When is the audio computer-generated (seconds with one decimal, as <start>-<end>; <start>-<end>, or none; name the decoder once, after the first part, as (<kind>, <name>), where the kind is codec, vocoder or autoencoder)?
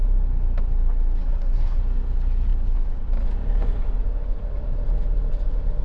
1.2-1.8 (codec, SNAC)